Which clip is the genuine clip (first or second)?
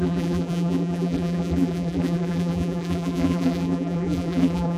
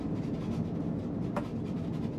second